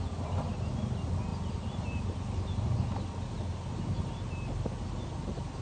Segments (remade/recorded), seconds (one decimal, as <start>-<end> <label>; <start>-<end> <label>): 0.0-5.6 recorded